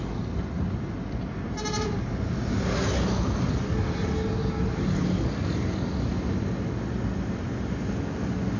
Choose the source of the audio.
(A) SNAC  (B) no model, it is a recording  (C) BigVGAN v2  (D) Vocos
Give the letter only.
B